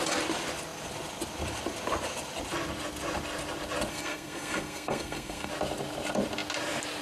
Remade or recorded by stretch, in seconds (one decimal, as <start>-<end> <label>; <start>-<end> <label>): 0.0-3.9 recorded; 3.9-5.5 remade; 5.5-7.0 recorded